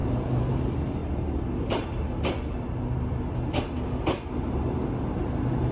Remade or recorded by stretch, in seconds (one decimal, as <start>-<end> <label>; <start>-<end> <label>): 0.0-0.5 recorded; 0.5-1.0 remade; 1.0-4.4 recorded; 4.4-5.7 remade